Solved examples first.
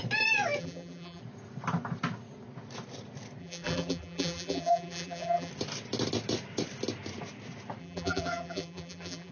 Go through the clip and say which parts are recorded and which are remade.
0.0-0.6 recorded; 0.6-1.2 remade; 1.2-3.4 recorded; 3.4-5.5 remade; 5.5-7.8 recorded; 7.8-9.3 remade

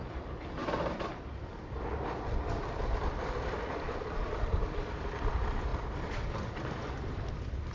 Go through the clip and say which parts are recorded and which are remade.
0.0-0.6 recorded; 0.6-5.2 remade; 5.2-5.7 recorded; 5.7-7.3 remade; 7.3-7.7 recorded

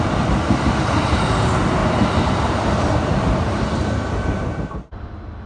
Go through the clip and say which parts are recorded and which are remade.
0.0-1.8 recorded; 1.8-5.1 remade; 5.1-5.5 recorded

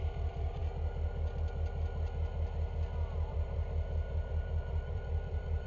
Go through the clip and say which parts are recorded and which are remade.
0.0-0.6 remade; 0.6-3.3 recorded; 3.3-5.7 remade